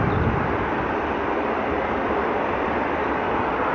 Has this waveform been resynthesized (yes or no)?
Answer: no